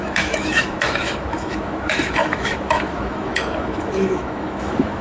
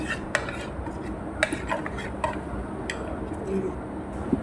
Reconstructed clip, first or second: first